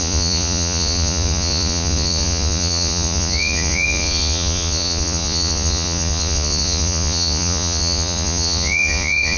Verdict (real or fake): fake